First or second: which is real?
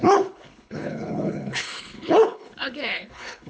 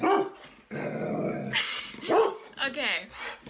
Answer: second